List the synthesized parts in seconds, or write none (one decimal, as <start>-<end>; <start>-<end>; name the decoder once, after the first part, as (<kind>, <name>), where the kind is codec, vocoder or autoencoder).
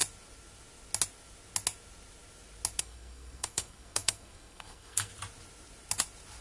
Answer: 2.8-5.1 (codec, SNAC)